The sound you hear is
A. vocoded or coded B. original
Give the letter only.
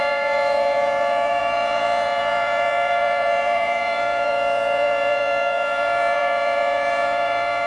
A